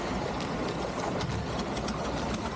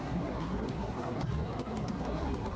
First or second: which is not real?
second